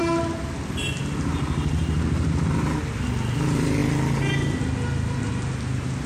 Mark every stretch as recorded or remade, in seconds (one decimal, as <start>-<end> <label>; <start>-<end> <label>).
0.0-6.1 recorded